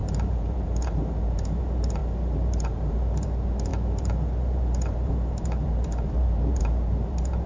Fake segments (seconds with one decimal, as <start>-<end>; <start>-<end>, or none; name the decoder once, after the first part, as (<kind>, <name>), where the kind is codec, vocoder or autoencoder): 0.0-7.5 (vocoder, BigVGAN v2)